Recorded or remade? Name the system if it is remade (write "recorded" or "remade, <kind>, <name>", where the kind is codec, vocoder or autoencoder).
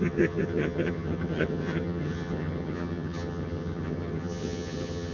remade, vocoder, HiFi-GAN